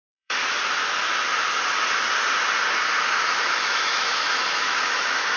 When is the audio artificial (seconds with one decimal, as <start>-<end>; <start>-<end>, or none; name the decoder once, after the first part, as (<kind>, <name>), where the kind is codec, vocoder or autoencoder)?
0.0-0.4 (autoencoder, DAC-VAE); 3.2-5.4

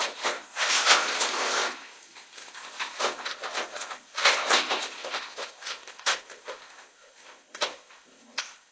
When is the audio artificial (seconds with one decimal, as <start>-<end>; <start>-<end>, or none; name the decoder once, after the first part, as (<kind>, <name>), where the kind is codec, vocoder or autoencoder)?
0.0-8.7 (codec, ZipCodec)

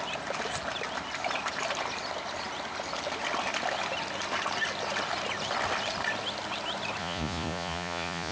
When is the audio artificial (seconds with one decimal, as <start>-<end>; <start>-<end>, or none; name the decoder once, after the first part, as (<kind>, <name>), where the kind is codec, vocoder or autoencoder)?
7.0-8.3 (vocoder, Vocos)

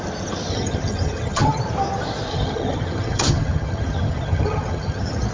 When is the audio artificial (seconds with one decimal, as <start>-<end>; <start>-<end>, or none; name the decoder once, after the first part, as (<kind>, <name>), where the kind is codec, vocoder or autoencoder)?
0.5-1.6 (vocoder, HiFi-GAN); 2.3-5.3

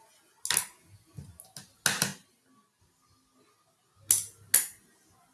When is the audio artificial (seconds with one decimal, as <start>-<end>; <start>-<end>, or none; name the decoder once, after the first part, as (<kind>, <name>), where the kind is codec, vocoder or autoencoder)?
none